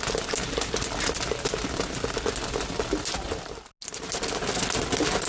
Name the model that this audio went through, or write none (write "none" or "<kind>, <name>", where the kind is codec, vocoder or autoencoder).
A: none